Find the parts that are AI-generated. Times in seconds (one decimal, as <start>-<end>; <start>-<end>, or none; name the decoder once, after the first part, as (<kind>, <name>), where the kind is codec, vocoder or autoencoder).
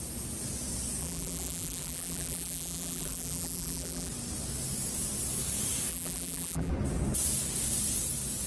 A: 1.0-4.1 (vocoder, BigVGAN v2); 5.9-6.7